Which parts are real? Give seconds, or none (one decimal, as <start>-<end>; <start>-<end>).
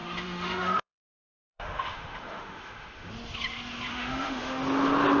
3.1-3.9; 4.6-5.2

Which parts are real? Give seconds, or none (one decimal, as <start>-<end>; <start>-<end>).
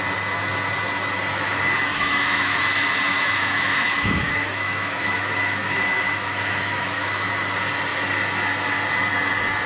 0.0-1.9; 2.6-3.1; 7.3-9.7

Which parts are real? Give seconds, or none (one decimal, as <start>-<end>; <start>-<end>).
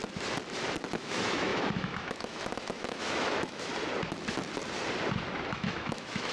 0.0-0.9; 3.7-5.5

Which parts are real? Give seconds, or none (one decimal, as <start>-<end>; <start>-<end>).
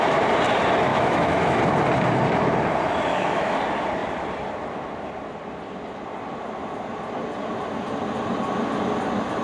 0.0-0.9; 1.6-3.1; 3.6-9.4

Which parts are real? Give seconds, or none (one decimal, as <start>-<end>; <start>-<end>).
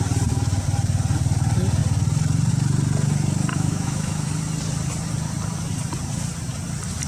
0.0-3.5; 4.3-7.1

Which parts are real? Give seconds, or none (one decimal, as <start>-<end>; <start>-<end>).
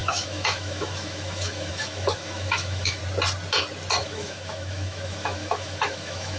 3.0-4.0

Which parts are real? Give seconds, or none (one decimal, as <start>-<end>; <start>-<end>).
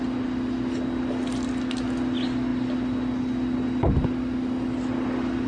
0.0-5.5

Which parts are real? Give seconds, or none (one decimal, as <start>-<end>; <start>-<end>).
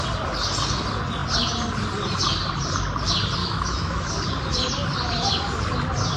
0.0-3.4; 4.1-6.2